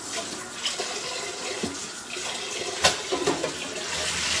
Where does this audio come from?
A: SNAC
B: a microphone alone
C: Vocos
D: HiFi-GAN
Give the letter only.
B